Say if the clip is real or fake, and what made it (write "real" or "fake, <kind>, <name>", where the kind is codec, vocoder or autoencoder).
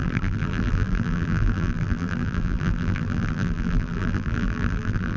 fake, vocoder, BigVGAN v2